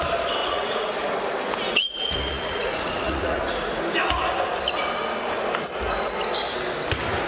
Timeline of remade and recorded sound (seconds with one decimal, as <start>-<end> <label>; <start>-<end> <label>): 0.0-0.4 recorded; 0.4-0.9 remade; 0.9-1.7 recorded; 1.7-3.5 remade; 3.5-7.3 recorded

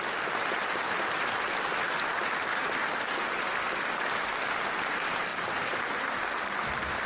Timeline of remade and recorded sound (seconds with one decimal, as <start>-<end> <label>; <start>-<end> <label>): 0.0-7.1 recorded

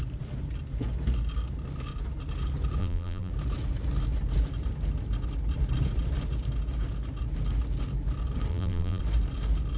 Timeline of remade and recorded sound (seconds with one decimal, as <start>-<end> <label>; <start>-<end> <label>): 0.0-2.8 recorded; 2.8-3.3 remade; 3.3-8.5 recorded; 8.5-9.0 remade; 9.0-9.8 recorded

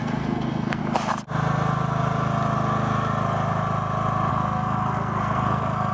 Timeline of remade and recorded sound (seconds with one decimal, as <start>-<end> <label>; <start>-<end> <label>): 0.0-0.8 remade; 0.8-4.3 recorded; 4.3-5.9 remade

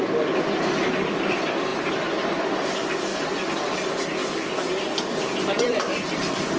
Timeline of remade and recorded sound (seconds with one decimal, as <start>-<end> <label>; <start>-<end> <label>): 0.0-3.1 remade; 3.1-3.7 recorded; 3.7-4.2 remade; 4.2-5.2 recorded; 5.2-6.6 remade

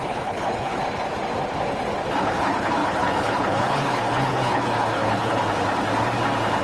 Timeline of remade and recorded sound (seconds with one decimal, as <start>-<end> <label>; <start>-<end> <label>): 0.0-0.8 remade; 0.8-2.2 recorded; 2.2-5.4 remade; 5.4-6.6 recorded

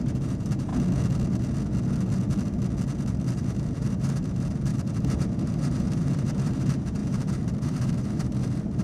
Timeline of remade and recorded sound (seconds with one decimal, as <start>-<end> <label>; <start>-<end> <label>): 0.0-0.7 remade; 0.7-3.4 recorded; 3.4-8.8 remade

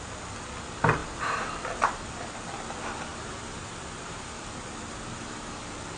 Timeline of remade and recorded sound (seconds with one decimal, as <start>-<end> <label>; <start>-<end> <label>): 0.0-1.0 recorded; 1.0-1.6 remade; 1.6-3.1 recorded; 3.1-5.6 remade; 5.6-6.0 recorded